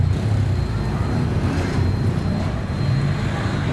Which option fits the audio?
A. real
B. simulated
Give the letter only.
A